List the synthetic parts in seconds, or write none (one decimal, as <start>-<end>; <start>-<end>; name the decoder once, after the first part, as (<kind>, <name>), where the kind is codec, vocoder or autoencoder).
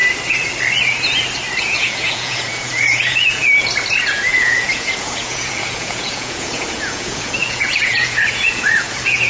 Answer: 1.6-3.4 (vocoder, Vocos); 4.1-9.3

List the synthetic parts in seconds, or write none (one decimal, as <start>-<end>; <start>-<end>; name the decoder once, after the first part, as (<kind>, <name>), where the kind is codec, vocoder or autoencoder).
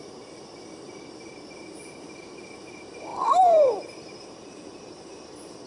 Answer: none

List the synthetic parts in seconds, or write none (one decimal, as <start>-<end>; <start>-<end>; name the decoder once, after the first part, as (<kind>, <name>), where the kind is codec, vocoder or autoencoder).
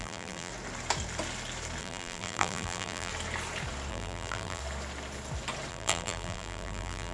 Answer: 0.0-0.5 (vocoder, BigVGAN v2); 1.8-3.1; 3.9-4.6; 5.7-7.1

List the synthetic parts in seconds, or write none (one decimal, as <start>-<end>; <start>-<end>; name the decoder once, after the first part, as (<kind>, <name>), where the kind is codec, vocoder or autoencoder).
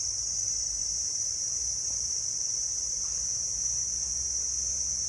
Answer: 0.8-2.2 (vocoder, BigVGAN v2)